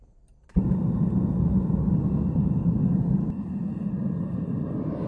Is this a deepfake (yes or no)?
no